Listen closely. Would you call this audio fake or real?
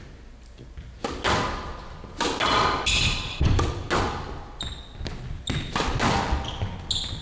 real